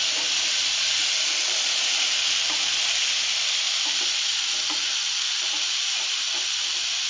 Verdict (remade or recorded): remade